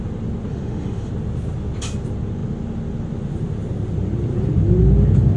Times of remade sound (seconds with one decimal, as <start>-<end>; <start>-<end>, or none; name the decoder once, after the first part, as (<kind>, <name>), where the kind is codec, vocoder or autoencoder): 0.5-1.1 (autoencoder, DAC-VAE)